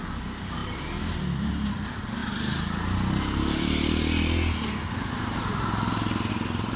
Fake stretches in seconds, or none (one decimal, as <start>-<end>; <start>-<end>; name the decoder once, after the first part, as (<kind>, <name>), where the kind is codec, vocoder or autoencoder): none